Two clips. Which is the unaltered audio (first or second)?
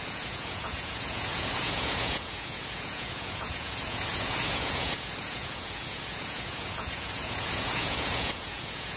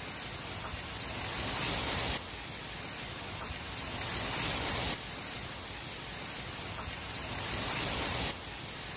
second